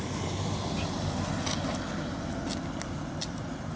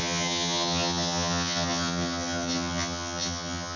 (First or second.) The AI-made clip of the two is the second